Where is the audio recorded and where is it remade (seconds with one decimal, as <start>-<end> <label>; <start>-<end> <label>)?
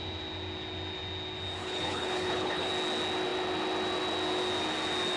0.0-1.6 recorded; 1.6-2.7 remade; 2.7-5.2 recorded